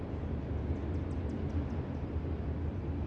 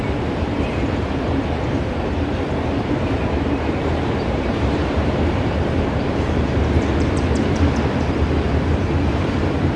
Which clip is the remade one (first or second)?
second